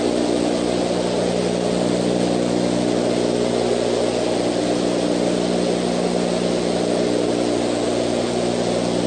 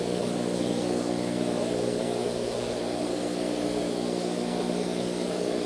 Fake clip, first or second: second